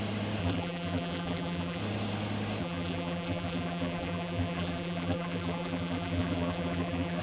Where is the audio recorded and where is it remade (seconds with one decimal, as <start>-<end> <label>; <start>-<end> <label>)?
0.0-0.4 recorded; 0.4-1.8 remade; 1.8-2.6 recorded; 2.6-7.2 remade